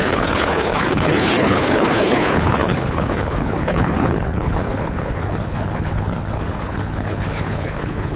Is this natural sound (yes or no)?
no